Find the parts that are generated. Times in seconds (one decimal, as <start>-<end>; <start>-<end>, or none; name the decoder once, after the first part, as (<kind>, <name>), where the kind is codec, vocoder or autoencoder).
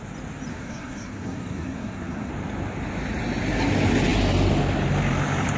0.5-2.3 (codec, SNAC)